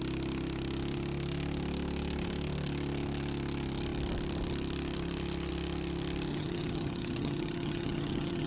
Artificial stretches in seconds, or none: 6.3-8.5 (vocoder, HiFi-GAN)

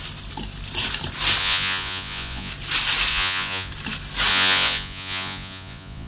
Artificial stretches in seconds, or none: 1.4-2.5 (vocoder, Vocos); 3.1-3.7; 4.3-6.1

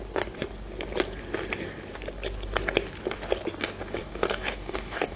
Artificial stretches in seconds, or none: 4.0-5.2 (codec, DAC)

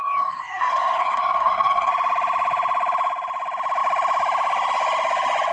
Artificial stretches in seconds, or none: 0.0-1.9 (codec, SNAC)

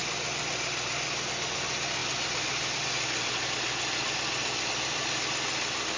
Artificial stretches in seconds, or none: none

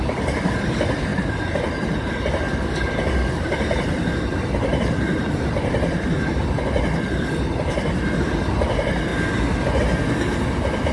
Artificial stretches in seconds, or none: 1.1-2.1 (vocoder, BigVGAN v2); 4.7-6.8

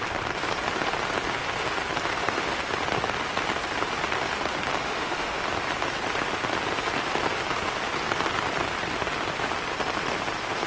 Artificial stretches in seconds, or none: 2.1-2.6 (autoencoder, DAC-VAE); 4.8-5.4

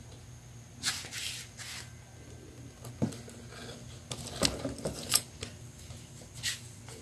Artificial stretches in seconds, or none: none